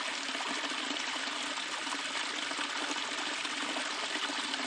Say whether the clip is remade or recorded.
recorded